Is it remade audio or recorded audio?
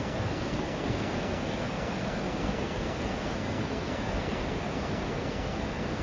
remade